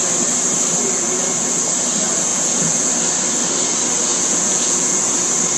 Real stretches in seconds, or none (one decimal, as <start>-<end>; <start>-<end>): 0.0-2.3; 2.9-4.1; 5.0-5.6